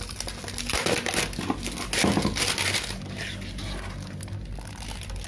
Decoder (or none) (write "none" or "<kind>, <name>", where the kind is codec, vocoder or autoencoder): none